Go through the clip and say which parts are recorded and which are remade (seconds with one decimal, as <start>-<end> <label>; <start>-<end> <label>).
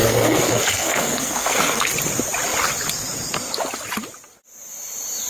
0.0-1.9 remade; 1.9-5.3 recorded